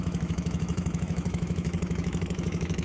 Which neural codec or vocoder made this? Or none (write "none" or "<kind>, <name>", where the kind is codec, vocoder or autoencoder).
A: autoencoder, DAC-VAE